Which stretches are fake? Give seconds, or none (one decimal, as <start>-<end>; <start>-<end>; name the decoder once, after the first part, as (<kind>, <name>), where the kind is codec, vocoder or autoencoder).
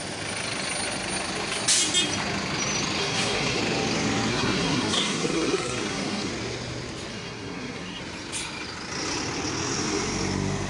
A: 3.0-3.6 (codec, SNAC); 4.3-6.3; 7.1-8.0